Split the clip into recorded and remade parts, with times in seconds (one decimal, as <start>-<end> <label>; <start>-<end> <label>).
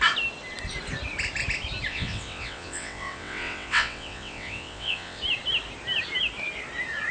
0.0-1.9 recorded; 1.9-5.2 remade; 5.2-7.1 recorded